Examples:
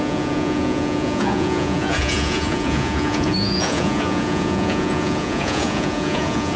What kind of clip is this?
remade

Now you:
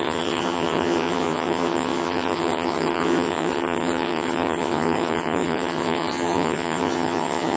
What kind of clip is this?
remade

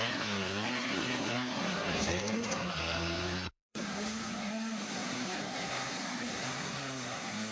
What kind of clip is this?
remade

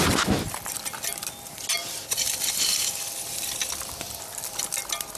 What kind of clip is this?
recorded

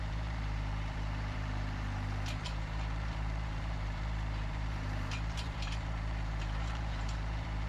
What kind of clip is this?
remade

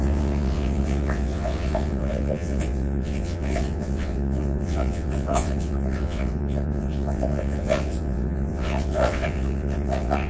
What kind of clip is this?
remade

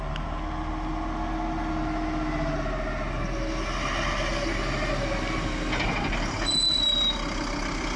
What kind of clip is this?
recorded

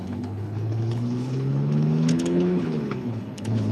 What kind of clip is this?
remade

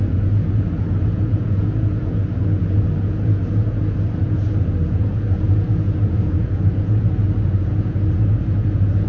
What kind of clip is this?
remade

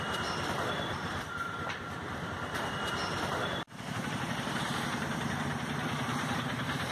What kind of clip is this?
remade